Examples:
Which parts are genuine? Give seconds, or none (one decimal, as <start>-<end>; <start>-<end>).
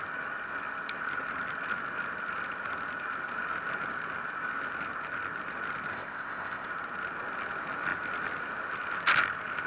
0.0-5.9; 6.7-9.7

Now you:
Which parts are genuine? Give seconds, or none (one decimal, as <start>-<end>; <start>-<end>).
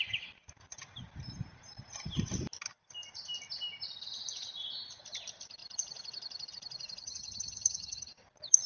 0.0-7.0; 8.1-8.7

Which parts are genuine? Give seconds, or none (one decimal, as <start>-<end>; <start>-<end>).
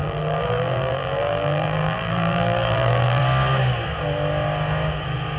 3.2-5.4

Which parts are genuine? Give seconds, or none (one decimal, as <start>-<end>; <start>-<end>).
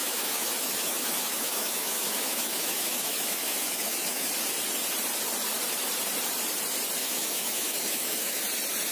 4.3-7.0; 8.4-8.9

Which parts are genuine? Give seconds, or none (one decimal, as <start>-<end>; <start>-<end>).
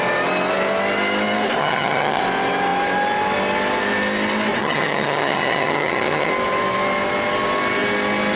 0.0-1.6; 2.2-4.6; 6.3-8.4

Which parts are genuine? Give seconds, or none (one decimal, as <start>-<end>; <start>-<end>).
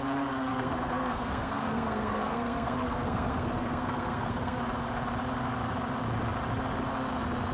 0.0-0.5; 4.6-7.5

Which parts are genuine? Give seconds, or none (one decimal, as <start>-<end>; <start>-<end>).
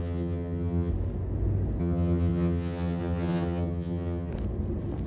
0.9-1.8; 4.3-5.1